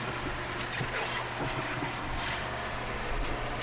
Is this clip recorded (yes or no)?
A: yes